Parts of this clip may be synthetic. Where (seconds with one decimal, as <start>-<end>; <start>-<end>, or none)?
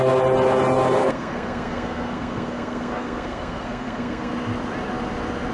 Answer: 1.0-4.3